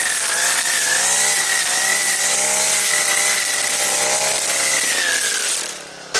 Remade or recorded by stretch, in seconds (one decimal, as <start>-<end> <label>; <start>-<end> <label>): 0.0-6.2 recorded